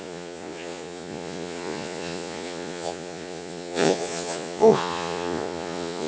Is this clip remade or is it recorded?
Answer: remade